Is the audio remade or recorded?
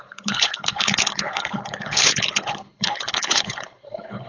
remade